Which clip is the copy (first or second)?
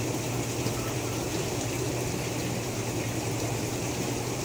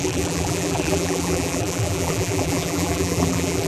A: second